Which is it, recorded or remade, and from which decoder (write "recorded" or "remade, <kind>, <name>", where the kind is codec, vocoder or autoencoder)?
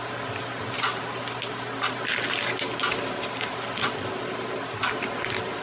recorded